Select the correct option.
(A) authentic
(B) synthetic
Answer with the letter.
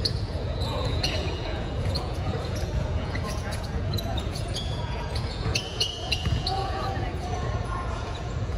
B